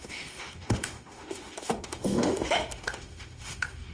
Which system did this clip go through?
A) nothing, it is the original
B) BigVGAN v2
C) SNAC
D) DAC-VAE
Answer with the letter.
D